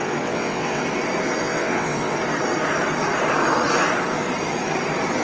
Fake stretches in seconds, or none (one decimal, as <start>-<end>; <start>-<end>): 0.0-0.8; 1.4-2.2